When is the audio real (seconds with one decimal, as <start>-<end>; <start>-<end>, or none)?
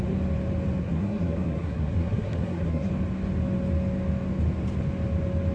0.0-0.8; 2.9-5.5